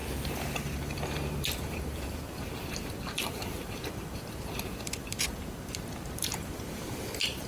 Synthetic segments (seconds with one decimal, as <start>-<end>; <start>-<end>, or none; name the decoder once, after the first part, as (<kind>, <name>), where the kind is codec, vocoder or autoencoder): 1.3-7.5 (vocoder, BigVGAN v2)